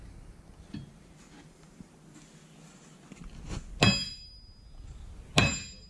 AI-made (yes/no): no